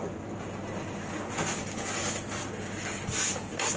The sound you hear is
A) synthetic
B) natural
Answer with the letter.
B